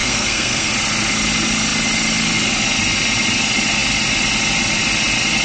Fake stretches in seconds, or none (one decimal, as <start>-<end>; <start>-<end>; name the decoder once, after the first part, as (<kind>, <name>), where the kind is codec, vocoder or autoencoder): 0.0-0.7 (codec, SNAC)